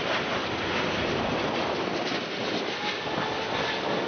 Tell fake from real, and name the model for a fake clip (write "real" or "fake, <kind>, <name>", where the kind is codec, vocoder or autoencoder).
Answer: real